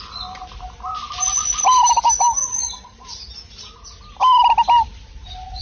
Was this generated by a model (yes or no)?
no